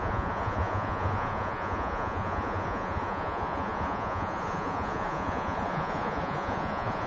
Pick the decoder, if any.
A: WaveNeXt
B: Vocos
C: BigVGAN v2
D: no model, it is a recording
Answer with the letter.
B